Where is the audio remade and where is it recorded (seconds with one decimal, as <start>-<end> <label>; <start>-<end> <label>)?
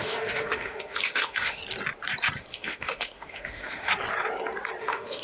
0.0-1.6 remade; 1.6-2.4 recorded; 2.4-3.9 remade; 3.9-4.8 recorded; 4.8-5.2 remade